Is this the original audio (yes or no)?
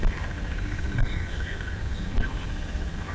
no